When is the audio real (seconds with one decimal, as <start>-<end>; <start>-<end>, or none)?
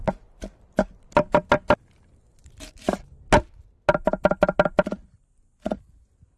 0.0-2.4; 3.0-6.4